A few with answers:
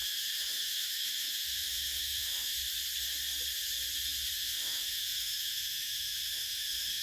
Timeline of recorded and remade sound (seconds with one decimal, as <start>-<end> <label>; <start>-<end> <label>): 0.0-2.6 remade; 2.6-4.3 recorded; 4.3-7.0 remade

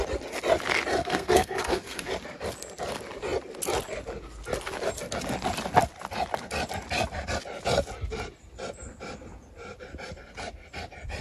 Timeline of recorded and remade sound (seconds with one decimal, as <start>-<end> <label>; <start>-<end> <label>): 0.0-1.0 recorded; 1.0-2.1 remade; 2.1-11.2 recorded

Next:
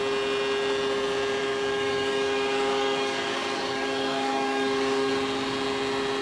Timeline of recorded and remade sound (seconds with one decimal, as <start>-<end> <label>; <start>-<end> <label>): 0.0-1.4 recorded; 1.4-5.1 remade; 5.1-6.2 recorded

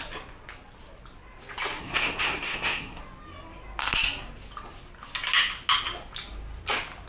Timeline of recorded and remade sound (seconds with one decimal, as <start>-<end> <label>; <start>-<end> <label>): 0.0-1.8 recorded; 1.8-3.0 remade; 3.0-7.1 recorded

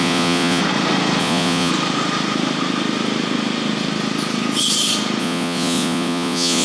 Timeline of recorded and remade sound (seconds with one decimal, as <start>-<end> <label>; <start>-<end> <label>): 0.0-0.6 remade; 0.6-1.2 recorded; 1.2-1.7 remade; 1.7-5.2 recorded; 5.2-6.6 remade